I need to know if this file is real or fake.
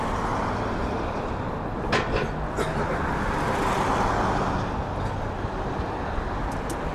real